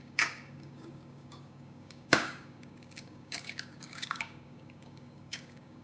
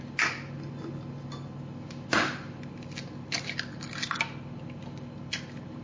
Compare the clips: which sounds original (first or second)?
second